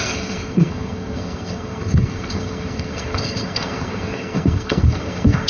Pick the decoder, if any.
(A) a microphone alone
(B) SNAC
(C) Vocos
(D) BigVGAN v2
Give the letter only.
B